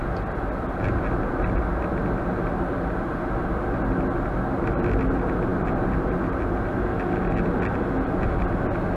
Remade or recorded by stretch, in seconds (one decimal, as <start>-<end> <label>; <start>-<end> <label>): 0.0-9.0 recorded